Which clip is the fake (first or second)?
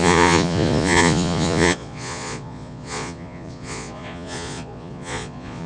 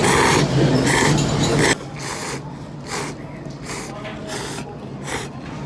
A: first